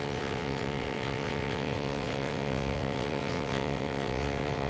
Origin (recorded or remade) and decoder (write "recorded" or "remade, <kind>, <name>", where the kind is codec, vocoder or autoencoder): remade, vocoder, WaveNeXt